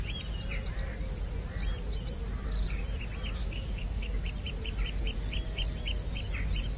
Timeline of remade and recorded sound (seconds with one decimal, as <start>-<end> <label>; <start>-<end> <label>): 0.0-3.4 recorded; 3.4-4.2 remade; 4.2-6.8 recorded